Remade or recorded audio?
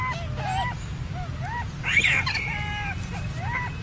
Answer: recorded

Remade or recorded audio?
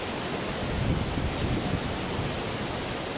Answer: recorded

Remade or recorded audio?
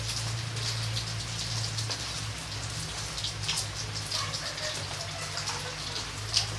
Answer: recorded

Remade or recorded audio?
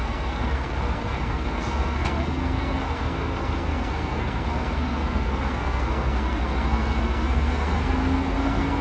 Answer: remade